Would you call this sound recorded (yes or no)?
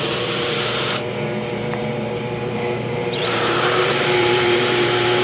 no